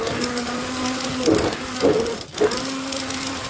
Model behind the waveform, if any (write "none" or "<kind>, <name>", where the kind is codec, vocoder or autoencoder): none